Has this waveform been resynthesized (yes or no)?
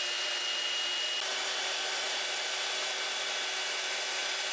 no